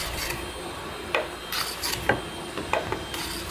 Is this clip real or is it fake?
real